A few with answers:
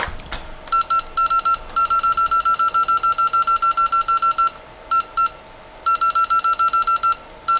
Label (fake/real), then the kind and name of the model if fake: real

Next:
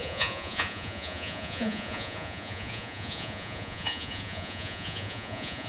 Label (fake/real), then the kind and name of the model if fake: fake, vocoder, Vocos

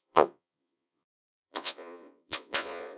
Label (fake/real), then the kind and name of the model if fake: fake, vocoder, Vocos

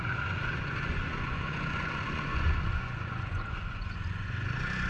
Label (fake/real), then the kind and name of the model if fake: fake, vocoder, Vocos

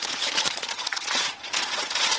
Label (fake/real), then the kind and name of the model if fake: fake, vocoder, Vocos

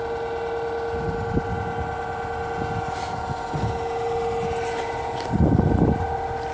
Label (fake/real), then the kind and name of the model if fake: real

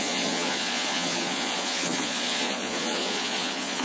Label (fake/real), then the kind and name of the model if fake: fake, vocoder, Vocos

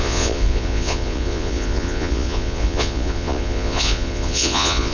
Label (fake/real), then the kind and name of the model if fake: fake, vocoder, Vocos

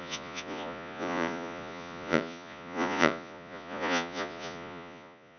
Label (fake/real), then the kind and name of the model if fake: fake, vocoder, Vocos